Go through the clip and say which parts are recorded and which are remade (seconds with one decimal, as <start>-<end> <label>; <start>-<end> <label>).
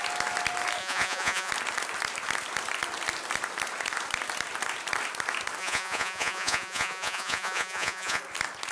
0.0-0.8 recorded; 0.8-1.5 remade; 1.5-5.6 recorded; 5.6-8.2 remade; 8.2-8.7 recorded